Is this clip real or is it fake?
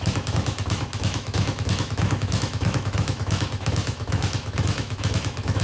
fake